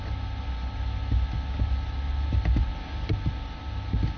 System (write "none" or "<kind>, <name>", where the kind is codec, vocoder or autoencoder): none